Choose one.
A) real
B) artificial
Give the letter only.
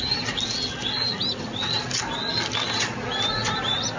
A